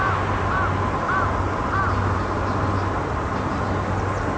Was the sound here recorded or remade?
recorded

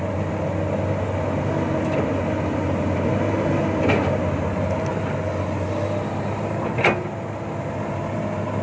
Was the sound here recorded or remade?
recorded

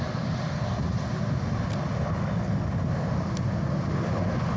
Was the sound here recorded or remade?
recorded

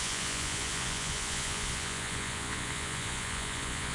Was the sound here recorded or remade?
remade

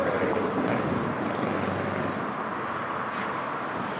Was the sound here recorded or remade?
recorded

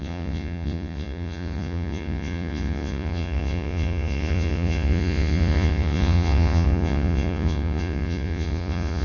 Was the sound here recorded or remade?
remade